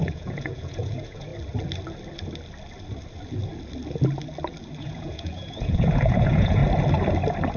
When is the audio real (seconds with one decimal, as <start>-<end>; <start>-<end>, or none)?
1.3-4.8; 6.6-7.6